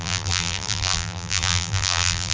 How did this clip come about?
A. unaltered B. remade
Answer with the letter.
B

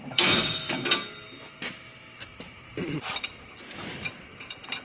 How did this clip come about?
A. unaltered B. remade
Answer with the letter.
A